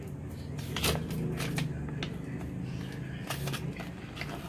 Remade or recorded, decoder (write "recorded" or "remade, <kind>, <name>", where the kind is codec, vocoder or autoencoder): recorded